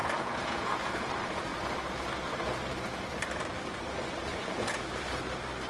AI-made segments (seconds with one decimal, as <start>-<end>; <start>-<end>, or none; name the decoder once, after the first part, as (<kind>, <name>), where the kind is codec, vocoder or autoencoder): 0.0-0.9 (vocoder, Vocos); 4.3-4.9